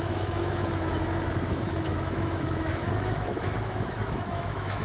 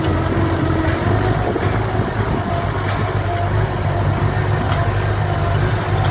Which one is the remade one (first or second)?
first